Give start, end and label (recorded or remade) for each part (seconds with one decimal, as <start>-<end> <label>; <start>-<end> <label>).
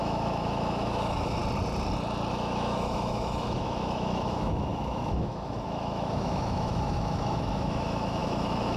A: 0.0-1.4 remade; 1.4-2.3 recorded; 2.3-8.8 remade